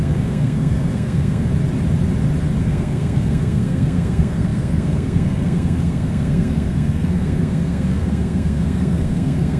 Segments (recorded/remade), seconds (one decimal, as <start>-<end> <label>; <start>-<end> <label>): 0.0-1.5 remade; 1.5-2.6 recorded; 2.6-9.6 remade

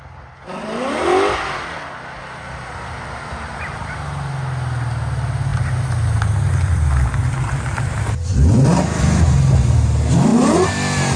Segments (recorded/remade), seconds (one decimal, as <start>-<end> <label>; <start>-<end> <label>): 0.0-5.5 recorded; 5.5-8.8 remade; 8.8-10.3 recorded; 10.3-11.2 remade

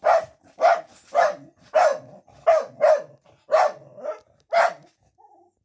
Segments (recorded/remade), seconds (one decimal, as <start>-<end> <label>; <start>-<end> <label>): 0.0-5.6 recorded

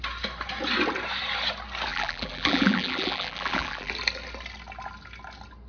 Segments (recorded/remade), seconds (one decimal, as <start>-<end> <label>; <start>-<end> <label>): 0.0-1.9 recorded; 1.9-3.9 remade; 3.9-5.7 recorded

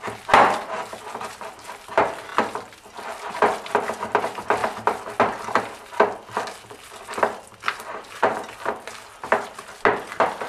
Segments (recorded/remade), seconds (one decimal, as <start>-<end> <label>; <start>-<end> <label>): 0.0-10.5 recorded